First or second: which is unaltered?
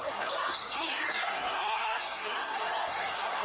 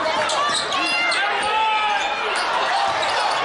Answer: second